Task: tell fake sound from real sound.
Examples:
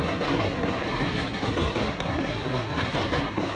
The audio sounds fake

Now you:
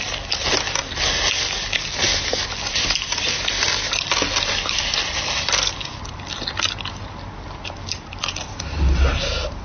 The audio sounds real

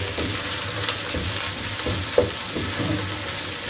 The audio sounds real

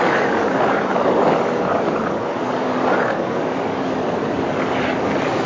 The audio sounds fake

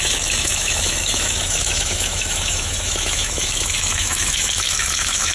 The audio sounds fake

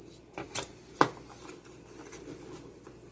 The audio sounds real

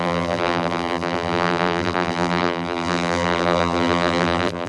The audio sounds fake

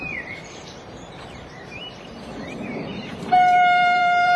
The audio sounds fake